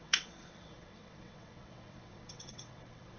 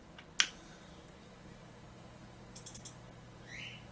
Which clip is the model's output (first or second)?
first